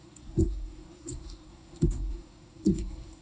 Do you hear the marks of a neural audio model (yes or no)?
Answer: yes